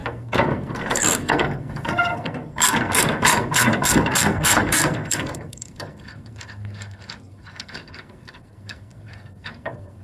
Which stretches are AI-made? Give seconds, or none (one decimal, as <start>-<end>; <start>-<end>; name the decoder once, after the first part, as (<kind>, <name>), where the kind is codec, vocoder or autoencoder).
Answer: 0.0-10.0 (codec, SNAC)